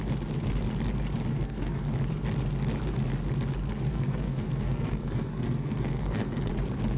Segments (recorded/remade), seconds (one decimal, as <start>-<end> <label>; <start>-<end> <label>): 0.0-1.3 recorded; 1.3-1.9 remade; 1.9-3.9 recorded; 3.9-6.5 remade; 6.5-7.0 recorded